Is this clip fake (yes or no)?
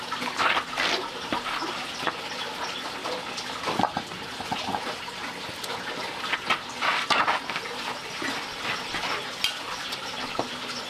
no